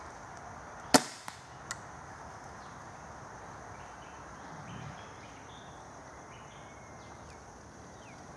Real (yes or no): yes